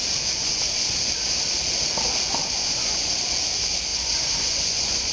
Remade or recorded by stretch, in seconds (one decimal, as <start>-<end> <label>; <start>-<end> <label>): 0.0-0.4 recorded; 0.4-1.1 remade; 1.1-2.4 recorded; 2.4-3.1 remade; 3.1-3.9 recorded; 3.9-5.1 remade